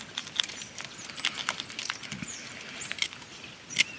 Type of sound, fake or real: real